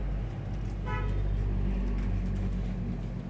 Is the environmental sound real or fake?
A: real